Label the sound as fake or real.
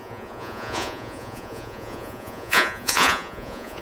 fake